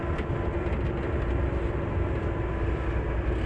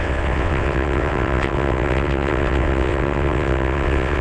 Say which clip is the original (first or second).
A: first